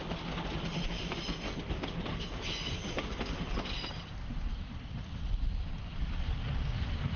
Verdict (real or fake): real